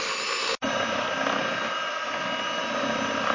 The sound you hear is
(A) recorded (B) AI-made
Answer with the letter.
A